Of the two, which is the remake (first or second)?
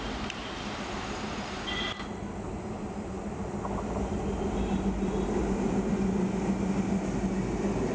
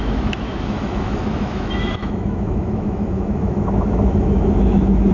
second